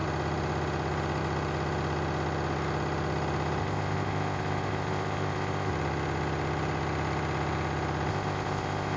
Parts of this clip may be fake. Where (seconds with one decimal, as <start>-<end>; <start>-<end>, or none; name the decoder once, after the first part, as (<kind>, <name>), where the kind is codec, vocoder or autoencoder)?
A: 3.6-5.7 (codec, ZipCodec); 8.1-9.0